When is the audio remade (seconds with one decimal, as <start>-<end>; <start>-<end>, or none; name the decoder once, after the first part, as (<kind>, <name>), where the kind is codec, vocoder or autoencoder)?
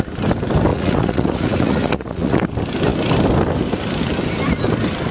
0.7-2.4 (vocoder, Vocos)